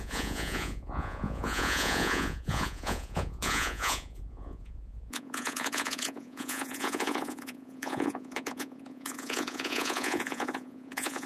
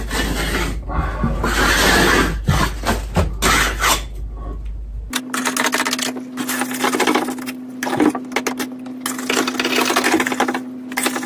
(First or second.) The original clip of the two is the second